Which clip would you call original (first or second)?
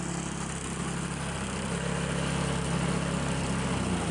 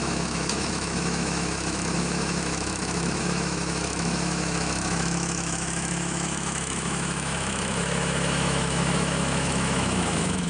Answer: first